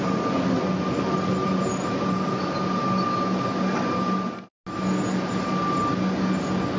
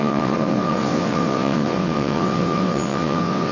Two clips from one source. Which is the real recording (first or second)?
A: first